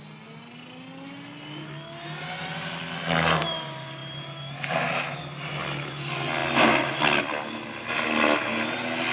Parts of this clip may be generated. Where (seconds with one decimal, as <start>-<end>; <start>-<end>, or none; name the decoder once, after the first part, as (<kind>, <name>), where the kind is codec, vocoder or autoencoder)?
none

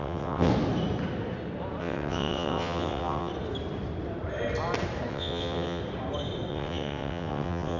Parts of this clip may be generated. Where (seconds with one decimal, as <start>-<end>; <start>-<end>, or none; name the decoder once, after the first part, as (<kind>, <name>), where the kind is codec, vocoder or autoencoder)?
0.0-0.5 (vocoder, WaveNeXt); 1.8-3.3; 5.1-5.8; 6.5-7.8